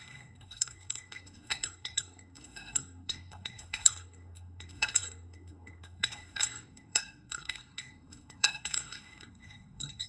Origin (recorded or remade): remade